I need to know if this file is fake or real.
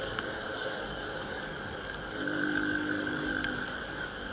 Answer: fake